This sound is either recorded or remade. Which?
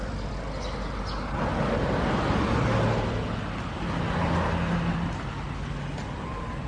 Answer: recorded